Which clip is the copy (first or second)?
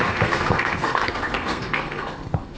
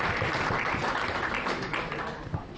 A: first